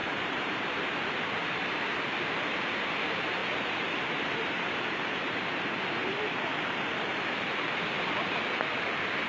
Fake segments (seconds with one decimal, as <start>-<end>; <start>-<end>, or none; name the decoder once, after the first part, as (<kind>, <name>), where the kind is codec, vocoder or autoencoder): 0.0-0.7 (vocoder, BigVGAN v2); 3.4-6.2; 7.1-7.9